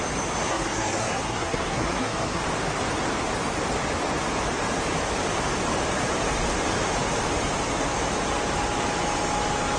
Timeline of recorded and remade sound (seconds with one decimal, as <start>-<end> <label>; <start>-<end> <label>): 0.0-0.5 recorded; 0.5-2.4 remade; 2.4-9.8 recorded